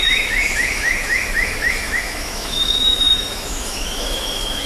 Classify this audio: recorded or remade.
remade